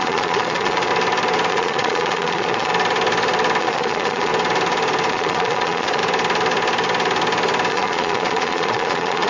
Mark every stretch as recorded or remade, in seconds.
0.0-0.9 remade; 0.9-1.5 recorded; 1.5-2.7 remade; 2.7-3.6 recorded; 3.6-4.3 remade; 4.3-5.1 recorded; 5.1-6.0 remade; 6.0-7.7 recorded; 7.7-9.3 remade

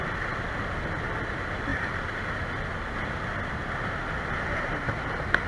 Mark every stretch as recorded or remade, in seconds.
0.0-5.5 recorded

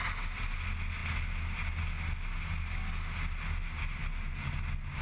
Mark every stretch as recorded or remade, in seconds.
0.0-5.0 recorded

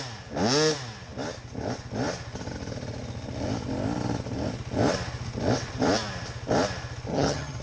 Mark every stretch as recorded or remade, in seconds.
0.0-7.1 recorded; 7.1-7.6 remade